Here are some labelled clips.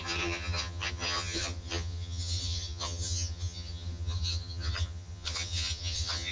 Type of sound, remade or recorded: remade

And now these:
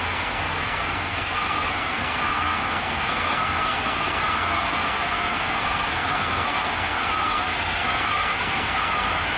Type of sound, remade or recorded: remade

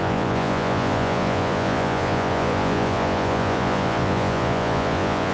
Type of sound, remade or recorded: remade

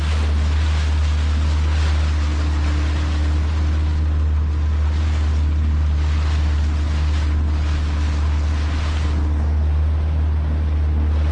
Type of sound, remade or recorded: recorded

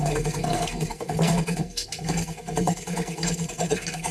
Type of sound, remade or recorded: remade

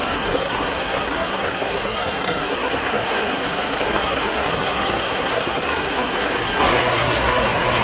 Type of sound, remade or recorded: remade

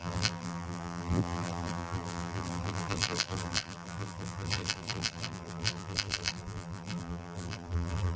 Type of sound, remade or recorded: remade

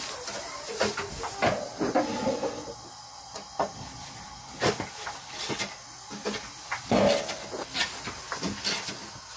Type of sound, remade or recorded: recorded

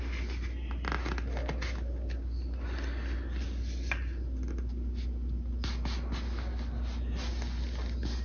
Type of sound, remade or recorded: recorded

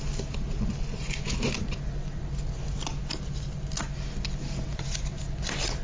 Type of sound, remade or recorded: recorded